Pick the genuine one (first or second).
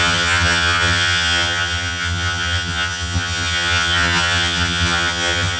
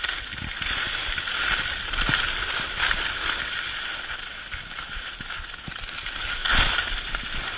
second